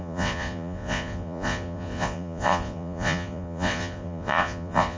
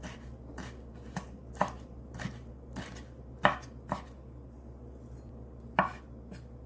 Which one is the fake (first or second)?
first